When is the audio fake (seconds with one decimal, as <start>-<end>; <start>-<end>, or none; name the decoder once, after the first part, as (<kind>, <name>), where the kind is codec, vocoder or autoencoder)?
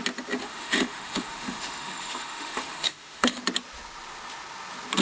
0.4-3.4 (autoencoder, DAC-VAE)